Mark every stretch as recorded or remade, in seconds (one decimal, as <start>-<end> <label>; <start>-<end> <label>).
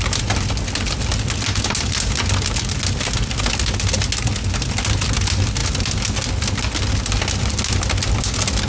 0.0-8.7 recorded